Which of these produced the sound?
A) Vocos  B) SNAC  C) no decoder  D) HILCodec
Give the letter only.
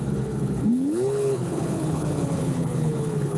D